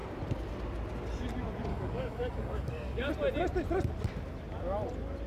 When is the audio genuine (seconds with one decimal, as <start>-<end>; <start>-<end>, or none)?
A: 0.0-1.7; 3.1-5.3